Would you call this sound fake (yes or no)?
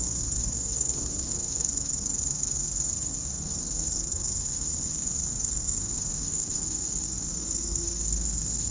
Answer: yes